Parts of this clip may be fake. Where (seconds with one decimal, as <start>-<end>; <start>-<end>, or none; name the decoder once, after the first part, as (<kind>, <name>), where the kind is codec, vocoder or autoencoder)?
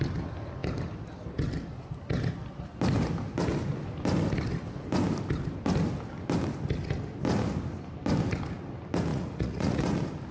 9.1-9.8 (vocoder, Vocos)